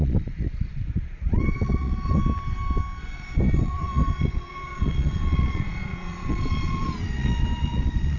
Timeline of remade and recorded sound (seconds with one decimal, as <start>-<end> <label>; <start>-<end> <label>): 0.0-2.2 remade; 2.2-3.0 recorded; 3.0-8.2 remade